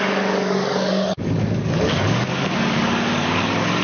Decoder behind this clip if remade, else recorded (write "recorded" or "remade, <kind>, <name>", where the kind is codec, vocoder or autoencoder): remade, codec, DAC